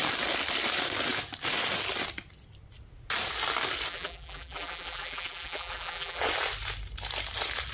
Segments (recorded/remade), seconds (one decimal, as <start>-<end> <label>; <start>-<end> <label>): 0.0-3.9 recorded; 3.9-6.2 remade; 6.2-7.7 recorded